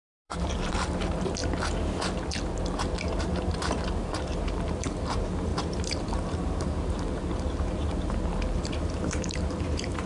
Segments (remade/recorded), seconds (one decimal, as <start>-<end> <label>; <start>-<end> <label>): 0.0-1.4 remade; 1.4-3.2 recorded; 3.2-10.1 remade